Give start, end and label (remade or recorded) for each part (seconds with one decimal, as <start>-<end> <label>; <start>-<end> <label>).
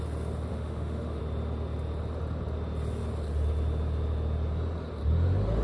0.0-0.5 recorded; 0.5-1.2 remade; 1.2-5.6 recorded